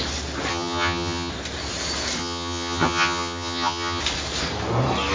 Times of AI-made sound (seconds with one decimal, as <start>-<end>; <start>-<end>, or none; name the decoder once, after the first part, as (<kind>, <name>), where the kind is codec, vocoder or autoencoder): 0.5-1.3 (vocoder, HiFi-GAN); 2.2-4.0